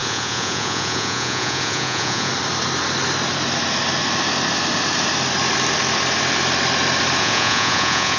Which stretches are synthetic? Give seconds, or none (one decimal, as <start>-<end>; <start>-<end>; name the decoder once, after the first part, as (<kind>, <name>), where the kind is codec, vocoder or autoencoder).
0.0-2.3 (vocoder, Vocos); 7.2-8.2